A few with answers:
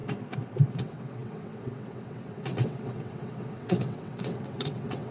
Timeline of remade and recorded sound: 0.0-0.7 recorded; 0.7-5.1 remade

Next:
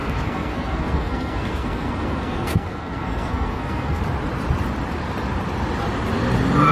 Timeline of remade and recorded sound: 0.0-4.0 remade; 4.0-6.7 recorded

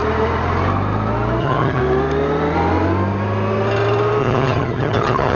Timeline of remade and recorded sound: 0.0-1.4 recorded; 1.4-1.8 remade; 1.8-4.2 recorded; 4.2-5.3 remade

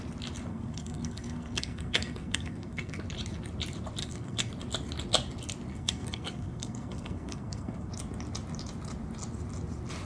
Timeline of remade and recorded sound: 0.0-0.5 recorded; 0.5-3.0 remade; 3.0-4.0 recorded; 4.0-4.5 remade; 4.5-5.7 recorded; 5.7-7.9 remade; 7.9-10.0 recorded

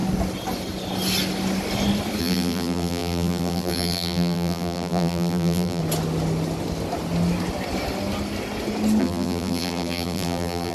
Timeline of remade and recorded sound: 0.0-2.2 recorded; 2.2-5.8 remade; 5.8-9.0 recorded; 9.0-10.7 remade

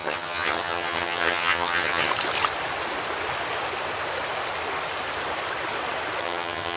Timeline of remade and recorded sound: 0.0-2.1 remade; 2.1-6.2 recorded; 6.2-6.8 remade